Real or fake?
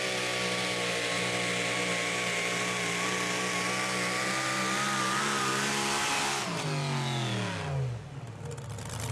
real